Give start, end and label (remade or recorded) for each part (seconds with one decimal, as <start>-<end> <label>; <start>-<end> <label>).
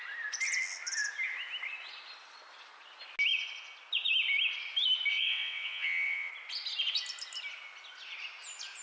0.0-5.1 recorded; 5.1-6.3 remade; 6.3-8.8 recorded